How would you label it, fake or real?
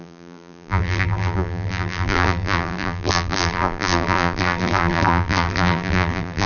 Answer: fake